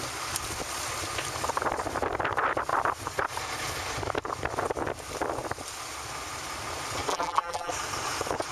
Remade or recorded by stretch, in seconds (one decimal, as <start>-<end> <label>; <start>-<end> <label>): 0.0-7.1 recorded; 7.1-7.7 remade; 7.7-8.5 recorded